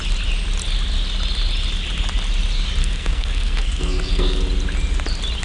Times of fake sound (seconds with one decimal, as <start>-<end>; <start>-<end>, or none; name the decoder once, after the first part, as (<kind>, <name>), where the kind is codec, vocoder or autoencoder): 2.8-4.4 (codec, SNAC)